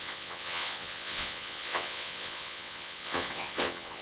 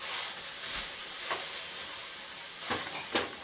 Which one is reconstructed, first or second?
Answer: first